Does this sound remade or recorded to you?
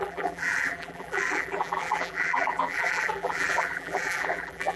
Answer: remade